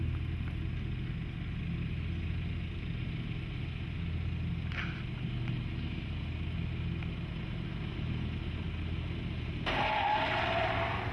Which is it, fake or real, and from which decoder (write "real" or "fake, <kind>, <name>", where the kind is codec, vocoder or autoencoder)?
real